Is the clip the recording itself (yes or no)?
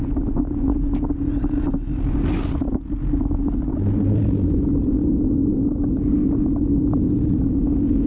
yes